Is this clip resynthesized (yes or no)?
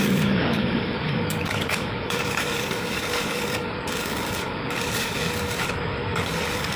yes